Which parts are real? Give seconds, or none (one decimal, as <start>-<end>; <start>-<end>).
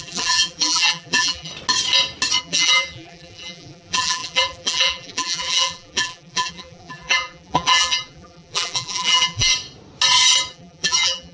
1.5-2.4; 9.5-10.5